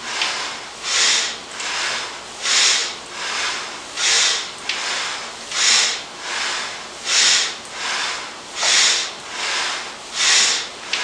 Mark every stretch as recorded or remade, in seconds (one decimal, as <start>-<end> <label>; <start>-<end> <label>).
0.0-11.0 recorded